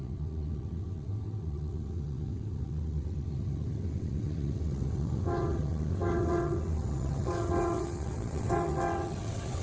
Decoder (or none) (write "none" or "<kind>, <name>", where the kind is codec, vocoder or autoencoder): vocoder, WaveNeXt